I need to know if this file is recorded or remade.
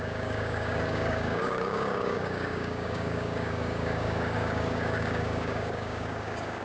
remade